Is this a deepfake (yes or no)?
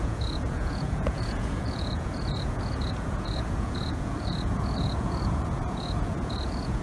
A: yes